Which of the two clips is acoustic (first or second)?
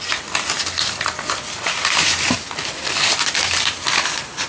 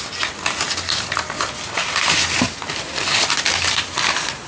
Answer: second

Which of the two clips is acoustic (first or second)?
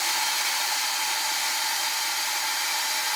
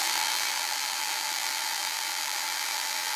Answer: first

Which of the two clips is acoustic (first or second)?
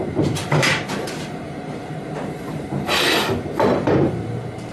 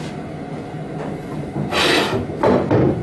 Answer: second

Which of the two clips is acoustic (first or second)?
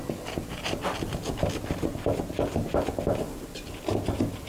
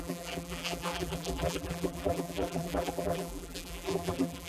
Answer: first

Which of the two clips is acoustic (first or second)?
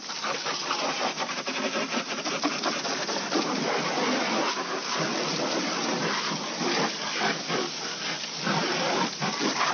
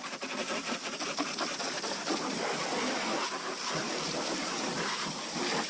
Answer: first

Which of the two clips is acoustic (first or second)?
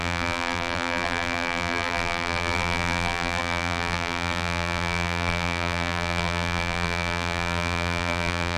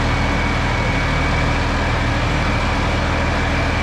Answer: second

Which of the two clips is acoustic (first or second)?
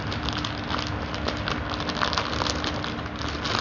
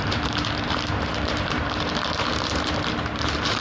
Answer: first